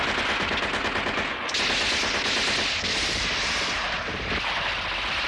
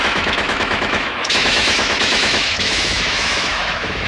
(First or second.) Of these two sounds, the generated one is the second